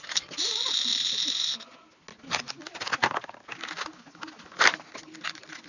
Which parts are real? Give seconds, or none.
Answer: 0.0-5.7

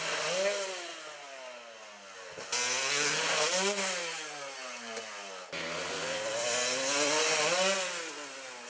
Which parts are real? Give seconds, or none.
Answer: 0.0-8.7

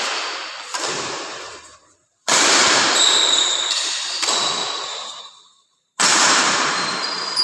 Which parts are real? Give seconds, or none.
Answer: 0.0-1.3; 3.7-6.1

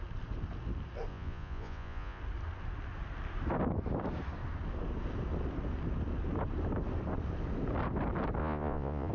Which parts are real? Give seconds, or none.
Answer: 0.0-1.1; 2.2-8.4